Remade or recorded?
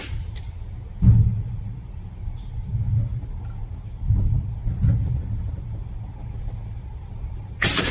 recorded